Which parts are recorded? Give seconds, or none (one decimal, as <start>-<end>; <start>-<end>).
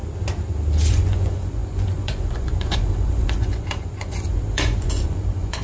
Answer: 0.0-0.9